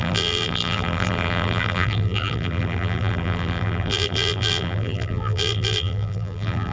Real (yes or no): no